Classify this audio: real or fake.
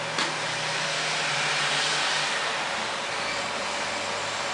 real